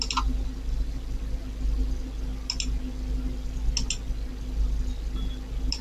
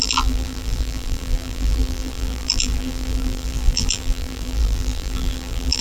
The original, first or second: first